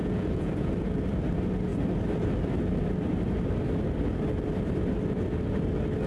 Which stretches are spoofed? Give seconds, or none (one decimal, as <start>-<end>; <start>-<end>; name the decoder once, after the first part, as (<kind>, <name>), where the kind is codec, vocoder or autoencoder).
0.0-0.7 (vocoder, Vocos)